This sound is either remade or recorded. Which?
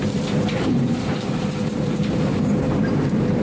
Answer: remade